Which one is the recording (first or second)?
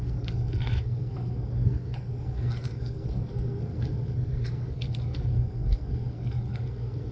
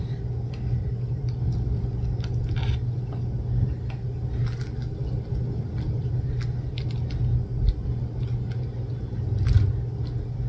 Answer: second